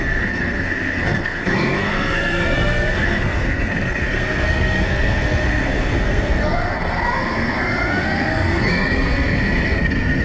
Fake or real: fake